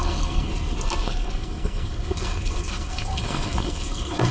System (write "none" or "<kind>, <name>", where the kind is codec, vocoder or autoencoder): codec, SNAC